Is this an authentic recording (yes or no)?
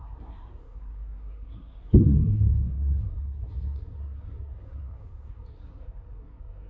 no